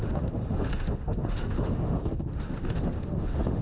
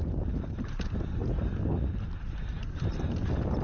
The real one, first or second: second